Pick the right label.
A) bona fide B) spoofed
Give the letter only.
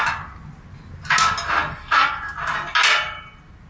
A